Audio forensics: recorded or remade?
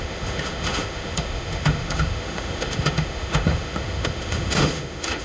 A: remade